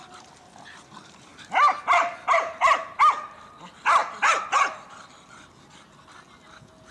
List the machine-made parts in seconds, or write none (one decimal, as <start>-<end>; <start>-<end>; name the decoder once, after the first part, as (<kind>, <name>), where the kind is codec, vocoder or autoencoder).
none